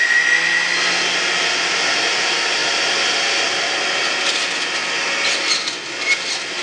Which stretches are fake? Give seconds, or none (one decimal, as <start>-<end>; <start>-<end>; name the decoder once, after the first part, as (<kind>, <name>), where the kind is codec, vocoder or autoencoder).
none